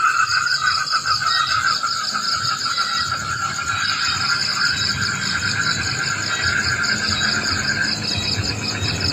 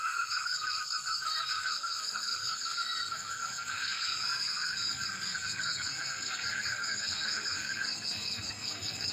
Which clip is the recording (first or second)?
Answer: first